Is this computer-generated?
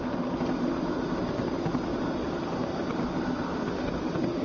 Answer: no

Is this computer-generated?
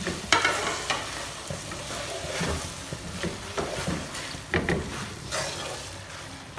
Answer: no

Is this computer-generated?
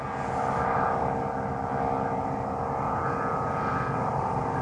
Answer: no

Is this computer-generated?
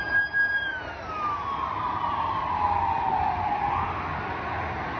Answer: no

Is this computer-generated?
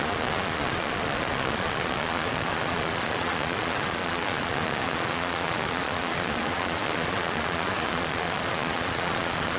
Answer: yes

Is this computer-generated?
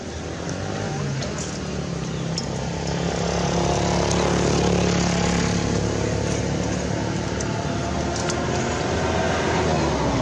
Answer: no